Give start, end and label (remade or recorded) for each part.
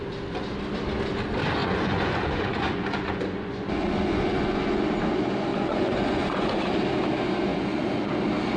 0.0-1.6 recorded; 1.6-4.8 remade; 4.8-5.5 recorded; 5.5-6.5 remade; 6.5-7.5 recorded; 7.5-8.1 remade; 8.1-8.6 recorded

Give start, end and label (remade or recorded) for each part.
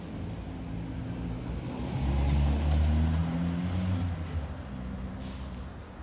0.0-6.0 recorded